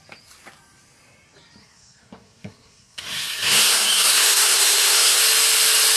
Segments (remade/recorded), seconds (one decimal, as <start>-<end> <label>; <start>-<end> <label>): 0.0-1.6 recorded; 1.6-5.2 remade; 5.2-6.0 recorded